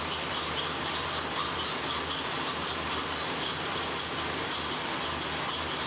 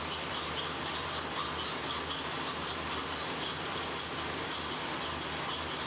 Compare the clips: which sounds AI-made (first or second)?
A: first